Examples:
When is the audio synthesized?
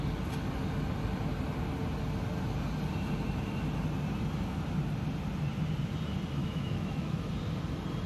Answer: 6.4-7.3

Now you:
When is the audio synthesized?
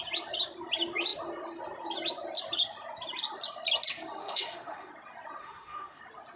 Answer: 4.2-4.9; 5.4-6.0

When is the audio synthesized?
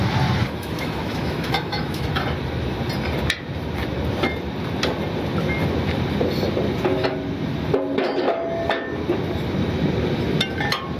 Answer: 0.4-2.2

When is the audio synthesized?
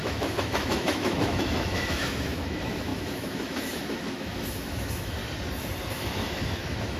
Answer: 0.0-5.2; 5.9-7.0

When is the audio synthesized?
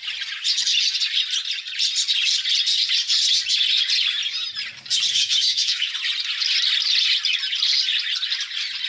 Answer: 5.1-5.9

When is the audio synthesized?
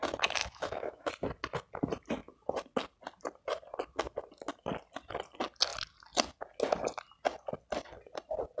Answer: 0.4-1.1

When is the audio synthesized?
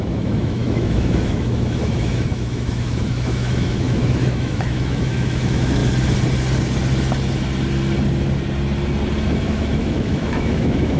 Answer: 0.0-5.8; 9.4-11.0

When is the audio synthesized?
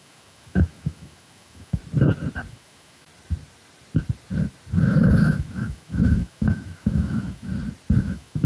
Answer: 0.0-1.8; 2.5-3.1; 5.2-7.5; 8.0-8.5